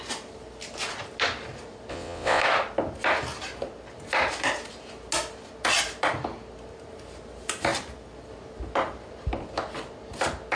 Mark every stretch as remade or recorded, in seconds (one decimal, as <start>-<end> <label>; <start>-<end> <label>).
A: 0.0-1.9 recorded; 1.9-2.4 remade; 2.4-10.6 recorded